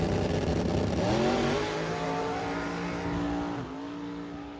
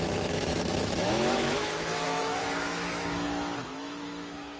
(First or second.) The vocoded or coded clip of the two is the second